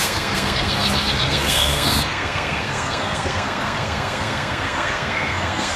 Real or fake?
fake